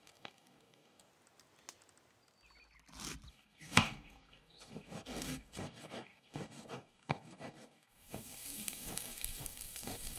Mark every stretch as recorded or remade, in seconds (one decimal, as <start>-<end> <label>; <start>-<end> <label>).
0.0-1.1 remade; 1.1-3.3 recorded; 3.3-10.2 remade

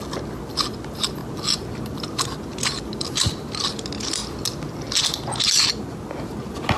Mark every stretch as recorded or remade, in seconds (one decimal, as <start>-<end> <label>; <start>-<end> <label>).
0.0-6.8 recorded

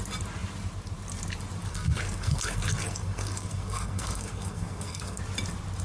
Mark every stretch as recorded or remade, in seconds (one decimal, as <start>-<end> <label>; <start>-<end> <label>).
0.0-1.7 recorded; 1.7-5.2 remade; 5.2-5.8 recorded

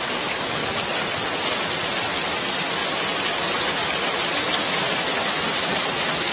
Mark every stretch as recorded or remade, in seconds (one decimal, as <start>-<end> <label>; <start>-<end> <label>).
0.0-0.6 remade; 0.6-2.4 recorded; 2.4-6.3 remade

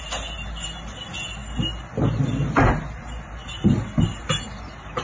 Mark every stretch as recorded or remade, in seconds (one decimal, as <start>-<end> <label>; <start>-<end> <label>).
0.0-5.0 recorded

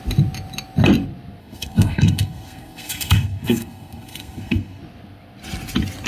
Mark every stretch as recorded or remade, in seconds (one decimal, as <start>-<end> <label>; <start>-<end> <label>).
0.0-1.4 recorded; 1.4-4.8 remade; 4.8-6.1 recorded